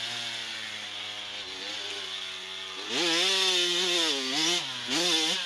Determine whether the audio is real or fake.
real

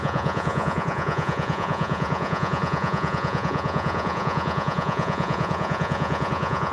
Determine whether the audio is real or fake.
fake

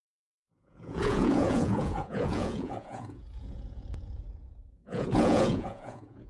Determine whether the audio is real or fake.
fake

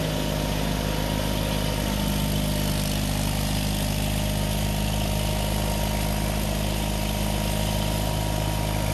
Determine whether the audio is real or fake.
real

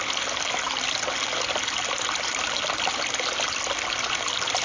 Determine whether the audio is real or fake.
real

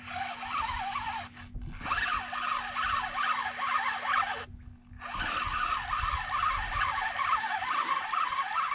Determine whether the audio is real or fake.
real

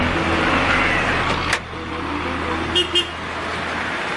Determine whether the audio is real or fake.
real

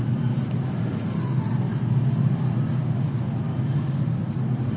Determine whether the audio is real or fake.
real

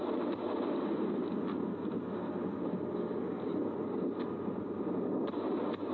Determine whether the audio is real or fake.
real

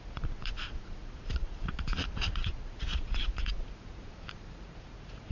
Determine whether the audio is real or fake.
fake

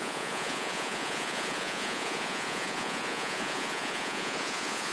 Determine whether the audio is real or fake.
fake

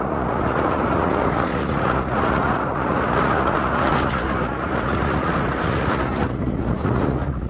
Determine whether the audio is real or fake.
fake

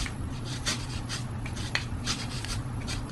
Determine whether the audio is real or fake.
fake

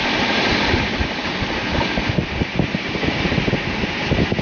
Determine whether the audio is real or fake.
real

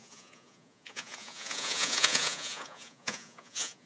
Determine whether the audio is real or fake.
fake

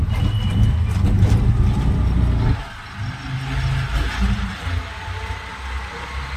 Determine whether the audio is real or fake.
real